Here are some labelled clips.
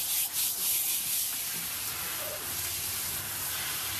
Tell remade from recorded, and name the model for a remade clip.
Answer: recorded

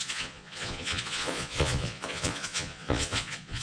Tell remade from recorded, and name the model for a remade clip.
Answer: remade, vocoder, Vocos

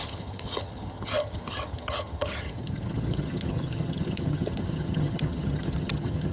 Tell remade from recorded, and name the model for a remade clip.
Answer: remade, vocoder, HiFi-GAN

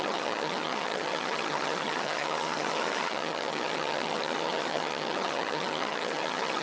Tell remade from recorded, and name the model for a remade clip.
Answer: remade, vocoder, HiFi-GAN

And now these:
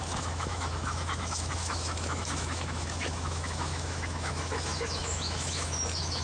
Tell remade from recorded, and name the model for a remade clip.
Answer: remade, autoencoder, DAC-VAE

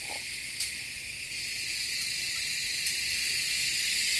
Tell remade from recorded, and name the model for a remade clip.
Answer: recorded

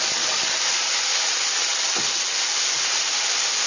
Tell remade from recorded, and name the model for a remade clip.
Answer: recorded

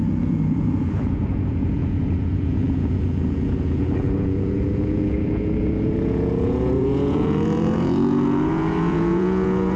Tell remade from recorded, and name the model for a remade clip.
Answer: remade, vocoder, Vocos